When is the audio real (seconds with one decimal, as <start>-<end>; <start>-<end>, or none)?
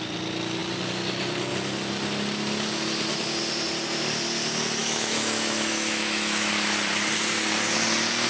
0.0-4.8; 6.5-8.3